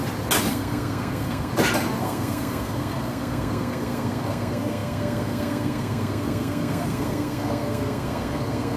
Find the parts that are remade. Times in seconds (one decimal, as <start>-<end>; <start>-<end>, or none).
0.5-1.5; 2.0-8.8